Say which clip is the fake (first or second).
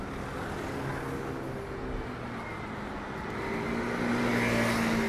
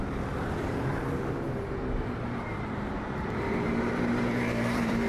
second